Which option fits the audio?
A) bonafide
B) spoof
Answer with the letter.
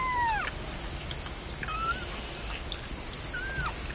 A